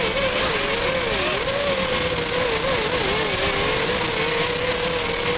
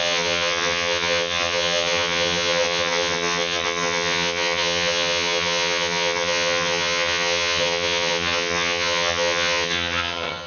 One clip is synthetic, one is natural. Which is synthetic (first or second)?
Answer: second